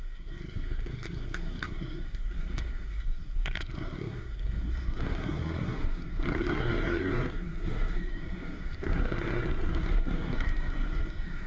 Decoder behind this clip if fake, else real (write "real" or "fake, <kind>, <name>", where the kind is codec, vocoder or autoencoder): fake, codec, SNAC